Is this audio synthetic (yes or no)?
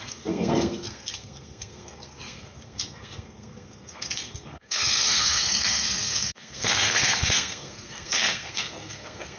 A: yes